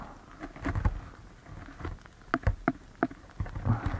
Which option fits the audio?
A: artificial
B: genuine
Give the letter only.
B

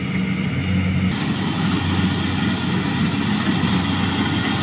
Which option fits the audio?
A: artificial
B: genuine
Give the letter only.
B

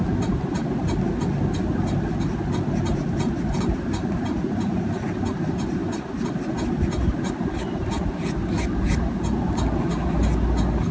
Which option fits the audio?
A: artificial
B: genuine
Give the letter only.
B